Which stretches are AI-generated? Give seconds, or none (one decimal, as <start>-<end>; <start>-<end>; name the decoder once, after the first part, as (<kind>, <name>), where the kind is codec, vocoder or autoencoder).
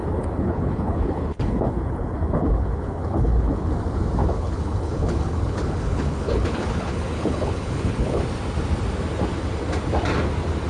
0.0-3.7 (codec, HILCodec); 4.2-8.2